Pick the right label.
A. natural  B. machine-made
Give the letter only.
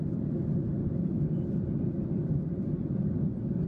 A